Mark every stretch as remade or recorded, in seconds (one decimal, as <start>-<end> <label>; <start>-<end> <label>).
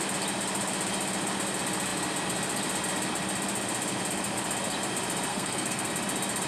0.0-5.3 recorded; 5.3-5.9 remade; 5.9-6.5 recorded